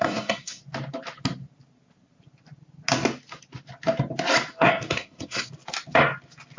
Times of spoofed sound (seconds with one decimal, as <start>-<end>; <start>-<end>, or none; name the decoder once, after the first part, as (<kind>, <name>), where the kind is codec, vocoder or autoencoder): 0.0-0.6 (codec, SNAC); 4.5-5.5